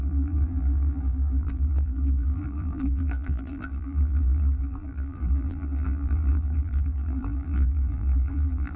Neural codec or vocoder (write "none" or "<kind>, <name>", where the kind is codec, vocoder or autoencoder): vocoder, BigVGAN v2